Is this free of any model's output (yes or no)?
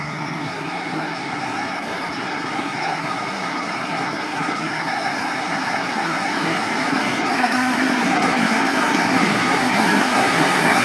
no